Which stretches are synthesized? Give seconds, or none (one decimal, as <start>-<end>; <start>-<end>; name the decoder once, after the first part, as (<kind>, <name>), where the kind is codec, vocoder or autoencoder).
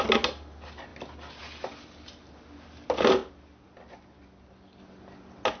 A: none